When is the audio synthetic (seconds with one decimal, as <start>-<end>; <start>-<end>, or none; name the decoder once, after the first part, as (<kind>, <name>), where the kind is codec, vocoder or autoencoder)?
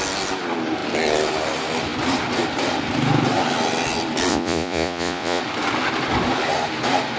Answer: 4.3-5.4 (vocoder, Vocos)